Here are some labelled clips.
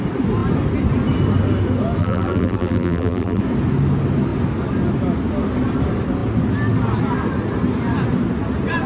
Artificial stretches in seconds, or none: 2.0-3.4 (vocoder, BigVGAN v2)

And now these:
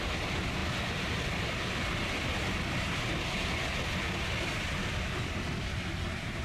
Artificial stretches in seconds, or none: none